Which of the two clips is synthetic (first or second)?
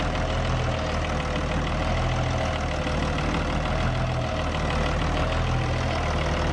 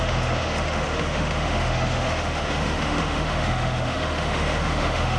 second